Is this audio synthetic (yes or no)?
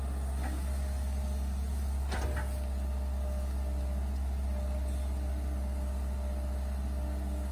no